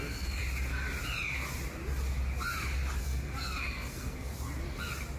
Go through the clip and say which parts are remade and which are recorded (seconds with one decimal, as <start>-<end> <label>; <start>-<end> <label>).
0.0-0.4 remade; 0.4-3.0 recorded; 3.0-4.3 remade; 4.3-5.2 recorded